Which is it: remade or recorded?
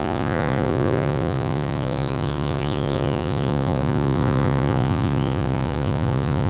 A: remade